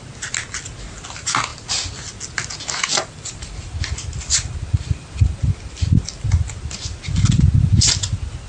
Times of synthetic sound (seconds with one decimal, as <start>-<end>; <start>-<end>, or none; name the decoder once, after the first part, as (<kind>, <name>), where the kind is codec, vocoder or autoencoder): none